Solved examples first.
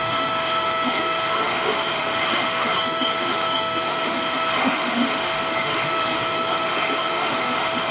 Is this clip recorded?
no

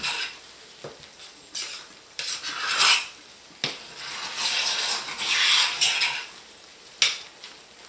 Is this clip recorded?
yes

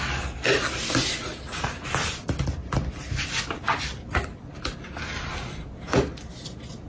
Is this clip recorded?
yes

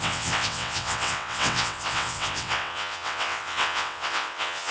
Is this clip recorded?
no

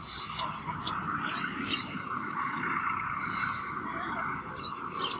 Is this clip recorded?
yes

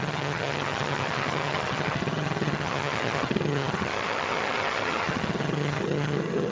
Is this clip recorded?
no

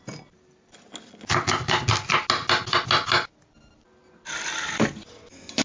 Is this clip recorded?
yes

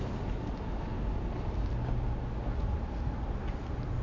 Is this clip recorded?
yes